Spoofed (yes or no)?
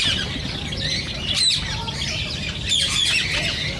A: no